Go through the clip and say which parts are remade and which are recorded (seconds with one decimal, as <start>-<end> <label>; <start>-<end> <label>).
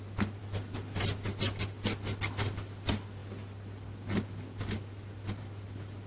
0.0-6.1 recorded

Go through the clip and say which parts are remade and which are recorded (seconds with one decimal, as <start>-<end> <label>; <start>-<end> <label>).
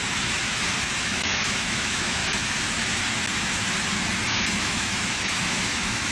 0.0-1.0 recorded; 1.0-2.2 remade; 2.2-4.6 recorded; 4.6-6.1 remade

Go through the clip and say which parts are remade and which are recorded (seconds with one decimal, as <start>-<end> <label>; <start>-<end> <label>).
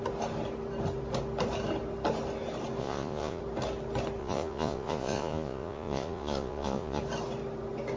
0.0-2.8 recorded; 2.8-3.4 remade; 3.4-4.2 recorded; 4.2-7.0 remade; 7.0-8.0 recorded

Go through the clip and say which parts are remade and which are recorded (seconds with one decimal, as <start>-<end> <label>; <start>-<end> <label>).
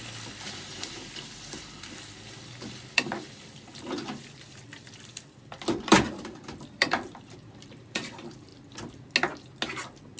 0.0-8.5 remade; 8.5-10.2 recorded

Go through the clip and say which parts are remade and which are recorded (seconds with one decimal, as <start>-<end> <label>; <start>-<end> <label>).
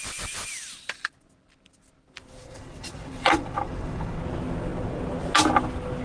0.0-2.4 recorded; 2.4-4.2 remade; 4.2-6.0 recorded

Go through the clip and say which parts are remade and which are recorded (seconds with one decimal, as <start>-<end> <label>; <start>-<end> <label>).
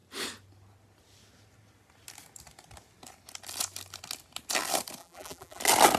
0.0-5.0 recorded; 5.0-5.6 remade; 5.6-6.0 recorded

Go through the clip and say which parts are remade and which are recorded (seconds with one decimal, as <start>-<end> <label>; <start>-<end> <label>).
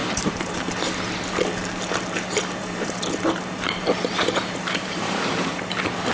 0.0-0.7 remade; 0.7-2.6 recorded; 2.6-5.6 remade; 5.6-6.1 recorded